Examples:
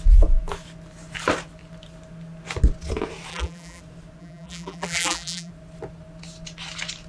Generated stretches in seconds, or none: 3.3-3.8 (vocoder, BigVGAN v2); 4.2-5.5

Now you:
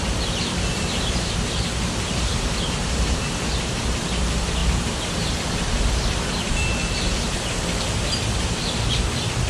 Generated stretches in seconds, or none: 0.7-1.3 (vocoder, BigVGAN v2); 2.3-3.2; 4.6-6.5

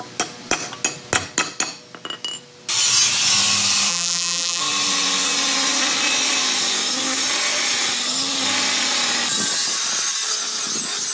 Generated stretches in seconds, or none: 3.9-4.6 (vocoder, BigVGAN v2)

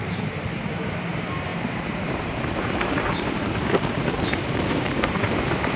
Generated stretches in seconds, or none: 0.0-5.8 (vocoder, BigVGAN v2)

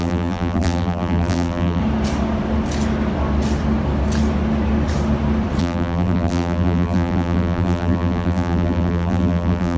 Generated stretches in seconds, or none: 0.0-1.8 (vocoder, BigVGAN v2); 5.6-9.8

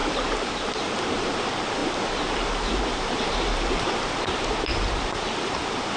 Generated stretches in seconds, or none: 0.0-1.3 (vocoder, BigVGAN v2); 1.8-4.2

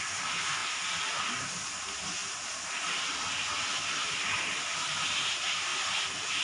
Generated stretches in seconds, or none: 0.6-1.2 (vocoder, BigVGAN v2)

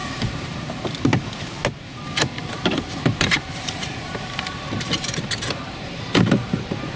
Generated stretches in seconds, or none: 0.0-1.1 (vocoder, BigVGAN v2); 1.8-7.0